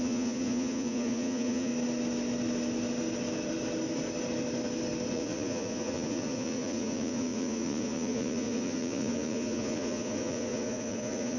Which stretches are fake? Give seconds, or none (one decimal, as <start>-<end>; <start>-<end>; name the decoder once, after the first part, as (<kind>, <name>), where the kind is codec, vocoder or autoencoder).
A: 0.0-1.7 (vocoder, Vocos); 5.1-11.4

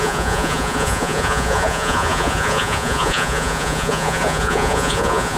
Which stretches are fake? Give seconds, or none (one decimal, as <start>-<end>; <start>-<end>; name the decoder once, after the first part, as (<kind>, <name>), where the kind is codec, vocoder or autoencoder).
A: 0.0-5.4 (vocoder, Vocos)

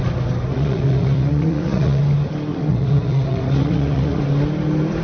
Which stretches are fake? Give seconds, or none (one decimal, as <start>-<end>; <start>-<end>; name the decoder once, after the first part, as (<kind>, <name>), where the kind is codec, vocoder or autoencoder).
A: 0.5-2.0 (vocoder, Vocos); 2.5-4.2

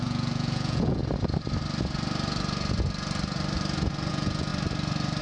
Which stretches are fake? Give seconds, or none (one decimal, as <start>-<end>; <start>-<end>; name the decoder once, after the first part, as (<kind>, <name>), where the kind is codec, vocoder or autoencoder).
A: 0.0-1.0 (vocoder, Vocos); 4.1-4.5